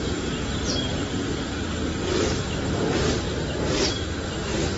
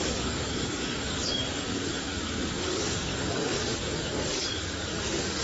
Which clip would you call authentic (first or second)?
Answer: first